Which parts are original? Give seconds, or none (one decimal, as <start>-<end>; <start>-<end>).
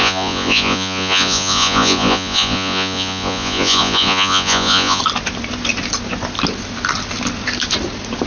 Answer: 5.0-8.3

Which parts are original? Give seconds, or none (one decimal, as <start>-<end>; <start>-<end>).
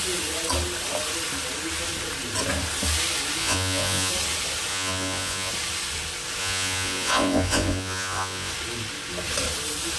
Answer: 0.0-3.4; 4.1-4.7; 5.5-6.4; 8.5-10.0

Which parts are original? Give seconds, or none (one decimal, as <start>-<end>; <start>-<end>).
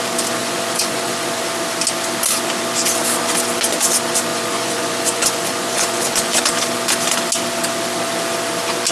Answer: 0.0-0.4; 1.4-4.3; 6.4-8.9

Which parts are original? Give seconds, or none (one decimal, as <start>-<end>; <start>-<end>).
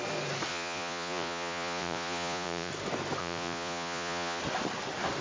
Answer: 0.0-0.5; 2.7-3.2; 4.4-5.2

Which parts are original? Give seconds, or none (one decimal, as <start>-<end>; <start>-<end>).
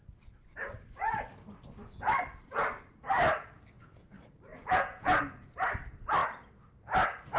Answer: 0.0-4.5; 5.2-7.4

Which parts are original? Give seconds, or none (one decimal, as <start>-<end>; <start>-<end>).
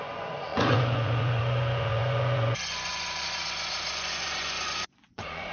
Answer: none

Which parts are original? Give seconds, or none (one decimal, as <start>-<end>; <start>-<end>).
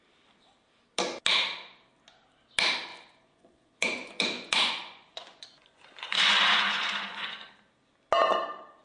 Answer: 0.0-2.9; 7.5-8.8